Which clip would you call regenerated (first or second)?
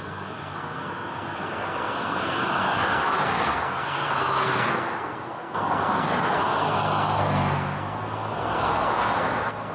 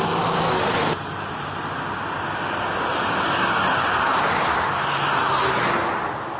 first